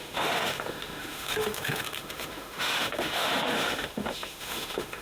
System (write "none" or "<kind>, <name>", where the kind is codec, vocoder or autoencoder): autoencoder, DAC-VAE